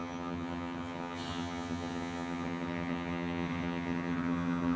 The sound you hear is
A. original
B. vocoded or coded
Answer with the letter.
B